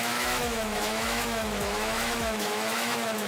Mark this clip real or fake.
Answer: fake